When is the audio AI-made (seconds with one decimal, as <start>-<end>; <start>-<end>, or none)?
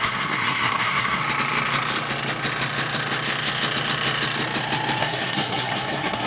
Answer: 0.0-1.2; 5.0-6.3